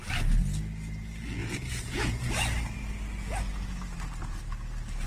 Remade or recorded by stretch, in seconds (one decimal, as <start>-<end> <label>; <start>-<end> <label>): 0.0-1.4 recorded; 1.4-2.2 remade; 2.2-5.1 recorded